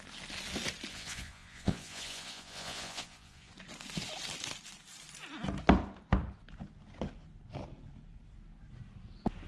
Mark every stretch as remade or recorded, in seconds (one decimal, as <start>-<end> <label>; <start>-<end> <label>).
0.0-0.9 recorded; 0.9-3.5 remade; 3.5-9.5 recorded